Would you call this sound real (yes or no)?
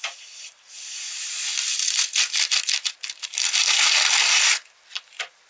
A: no